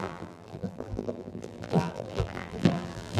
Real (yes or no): no